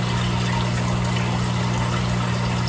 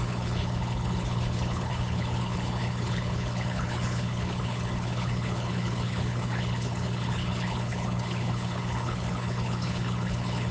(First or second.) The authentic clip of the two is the first